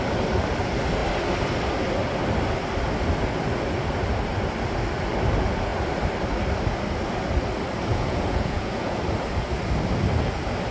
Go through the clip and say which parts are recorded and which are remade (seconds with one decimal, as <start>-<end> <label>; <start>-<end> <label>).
0.0-7.9 recorded; 7.9-9.0 remade; 9.0-10.7 recorded